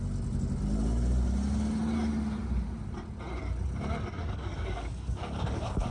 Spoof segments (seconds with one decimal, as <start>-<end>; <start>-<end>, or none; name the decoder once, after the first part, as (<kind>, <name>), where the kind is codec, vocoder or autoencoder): 4.2-5.9 (codec, DAC)